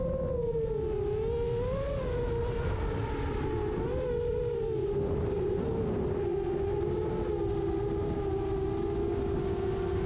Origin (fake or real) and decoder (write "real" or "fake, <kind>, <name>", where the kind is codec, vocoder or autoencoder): real